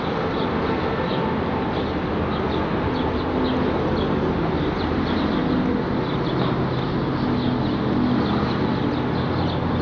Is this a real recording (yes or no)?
yes